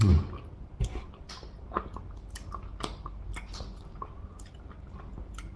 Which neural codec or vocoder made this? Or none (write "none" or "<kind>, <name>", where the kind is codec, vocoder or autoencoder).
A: none